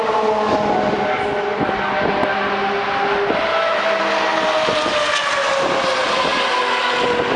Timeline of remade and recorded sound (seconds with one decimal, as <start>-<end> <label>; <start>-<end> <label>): 0.0-3.5 recorded; 3.5-4.0 remade; 4.0-7.4 recorded